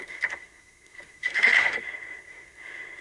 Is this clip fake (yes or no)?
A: yes